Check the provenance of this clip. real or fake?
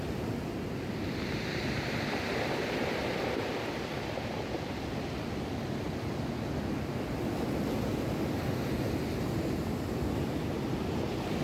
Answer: real